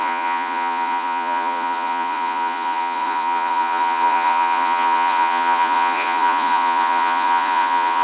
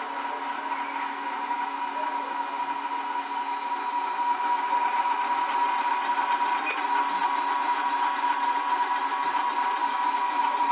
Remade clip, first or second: first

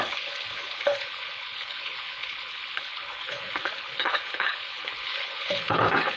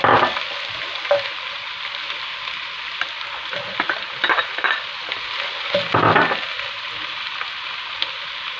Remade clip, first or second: first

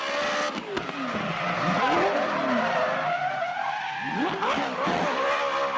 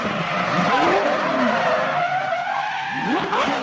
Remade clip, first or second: second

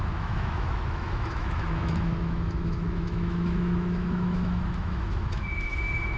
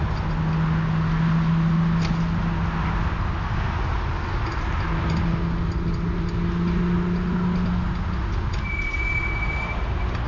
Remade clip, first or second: first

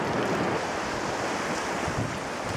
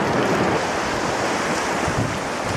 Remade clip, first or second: first